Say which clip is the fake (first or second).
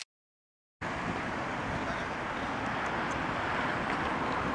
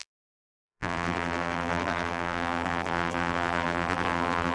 second